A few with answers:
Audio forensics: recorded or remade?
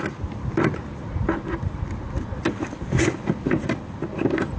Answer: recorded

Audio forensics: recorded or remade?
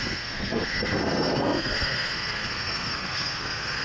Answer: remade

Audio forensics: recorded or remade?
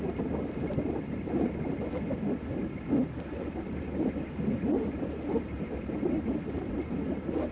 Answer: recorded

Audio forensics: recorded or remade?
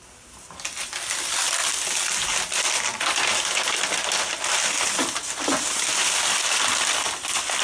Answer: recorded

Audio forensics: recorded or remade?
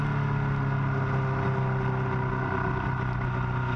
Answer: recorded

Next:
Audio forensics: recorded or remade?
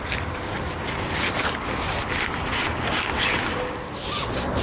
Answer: recorded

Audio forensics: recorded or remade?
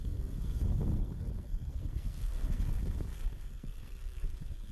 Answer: remade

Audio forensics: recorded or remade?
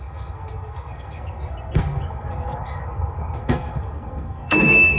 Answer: remade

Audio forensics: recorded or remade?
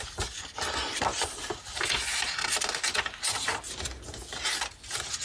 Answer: recorded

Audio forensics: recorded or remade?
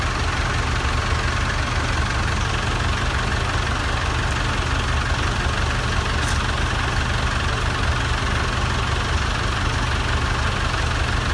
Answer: recorded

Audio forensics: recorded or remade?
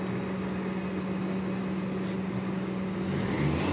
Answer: recorded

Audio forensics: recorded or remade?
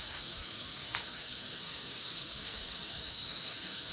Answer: remade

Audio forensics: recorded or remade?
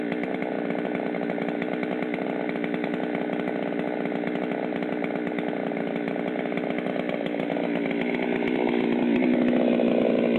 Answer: recorded